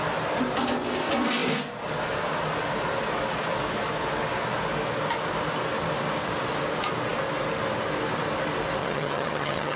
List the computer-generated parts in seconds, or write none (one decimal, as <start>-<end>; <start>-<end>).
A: 8.8-9.8